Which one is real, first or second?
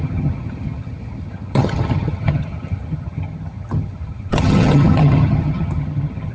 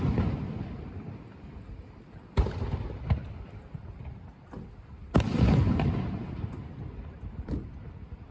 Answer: second